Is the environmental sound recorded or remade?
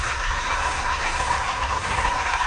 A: remade